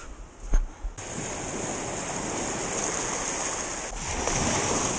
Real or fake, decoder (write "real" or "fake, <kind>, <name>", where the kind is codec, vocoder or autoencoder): real